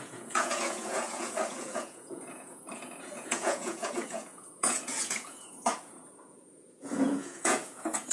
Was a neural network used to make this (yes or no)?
yes